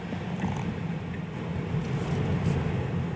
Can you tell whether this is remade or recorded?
recorded